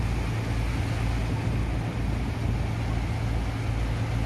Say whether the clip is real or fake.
real